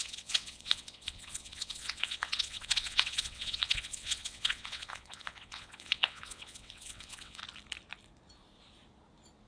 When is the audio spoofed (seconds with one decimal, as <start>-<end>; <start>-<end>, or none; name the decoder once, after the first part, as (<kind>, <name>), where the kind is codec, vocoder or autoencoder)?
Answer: 0.0-7.4 (vocoder, WaveNeXt)